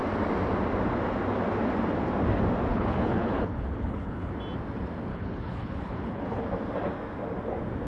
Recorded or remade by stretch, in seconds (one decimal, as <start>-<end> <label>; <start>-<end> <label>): 0.0-2.7 recorded; 2.7-4.3 remade; 4.3-5.1 recorded; 5.1-6.4 remade; 6.4-7.9 recorded